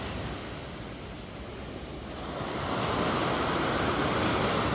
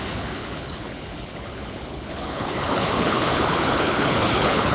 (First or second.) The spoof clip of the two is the second